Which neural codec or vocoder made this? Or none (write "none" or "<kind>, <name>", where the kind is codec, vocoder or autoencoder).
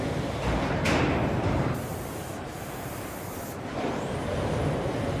vocoder, BigVGAN v2